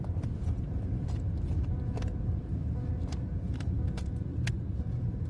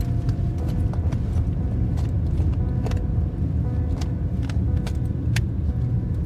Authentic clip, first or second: second